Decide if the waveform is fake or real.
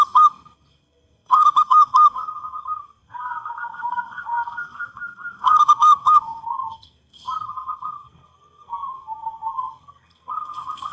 fake